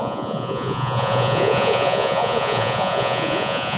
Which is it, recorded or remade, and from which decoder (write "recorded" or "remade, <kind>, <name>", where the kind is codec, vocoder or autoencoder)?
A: remade, vocoder, Vocos